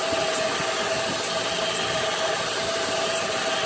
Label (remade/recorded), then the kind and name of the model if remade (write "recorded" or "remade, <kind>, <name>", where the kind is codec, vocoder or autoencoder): recorded